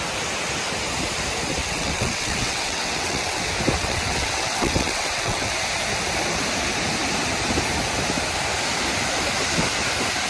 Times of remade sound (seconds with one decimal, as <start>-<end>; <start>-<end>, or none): 1.6-3.4; 3.8-5.5